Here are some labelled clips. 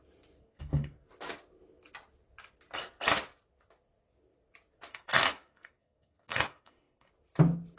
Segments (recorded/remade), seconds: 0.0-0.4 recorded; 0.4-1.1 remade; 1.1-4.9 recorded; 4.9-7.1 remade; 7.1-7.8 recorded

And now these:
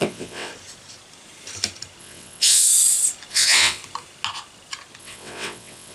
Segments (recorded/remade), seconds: 0.0-0.5 remade; 0.5-2.0 recorded; 2.0-2.7 remade; 2.7-3.3 recorded; 3.3-3.8 remade; 3.8-5.0 recorded; 5.0-5.9 remade

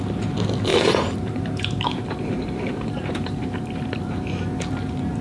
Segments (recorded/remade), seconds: 0.0-0.7 recorded; 0.7-3.8 remade; 3.8-5.2 recorded

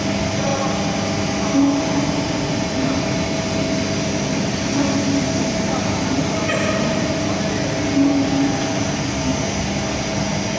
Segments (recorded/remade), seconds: 0.0-10.6 recorded

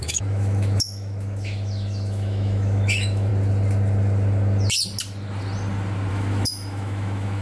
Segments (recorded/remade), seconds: 0.0-3.3 remade; 3.3-6.1 recorded; 6.1-7.4 remade

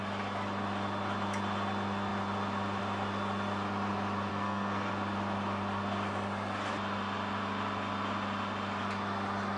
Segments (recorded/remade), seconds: 0.0-4.3 recorded; 4.3-4.9 remade; 4.9-9.6 recorded

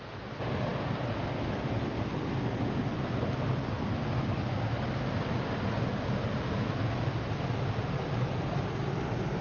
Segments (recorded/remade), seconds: 0.0-9.4 recorded

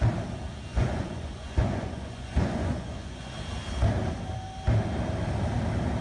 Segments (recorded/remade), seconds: 0.0-0.7 recorded; 0.7-3.3 remade; 3.3-6.0 recorded